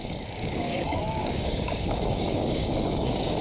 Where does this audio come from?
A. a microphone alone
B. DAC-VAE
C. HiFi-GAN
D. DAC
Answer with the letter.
D